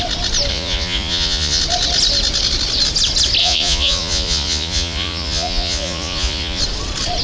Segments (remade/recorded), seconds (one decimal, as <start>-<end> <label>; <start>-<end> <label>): 0.0-0.5 recorded; 0.5-1.6 remade; 1.6-3.4 recorded; 3.4-6.6 remade; 6.6-7.2 recorded